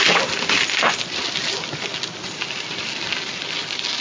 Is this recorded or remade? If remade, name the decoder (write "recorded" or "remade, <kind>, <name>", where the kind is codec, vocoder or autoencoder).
recorded